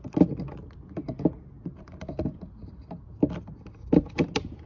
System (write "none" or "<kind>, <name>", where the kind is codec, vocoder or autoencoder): none